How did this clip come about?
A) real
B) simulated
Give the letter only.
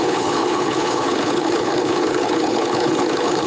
B